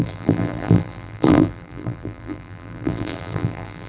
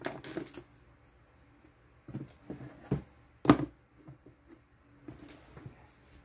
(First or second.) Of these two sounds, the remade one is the first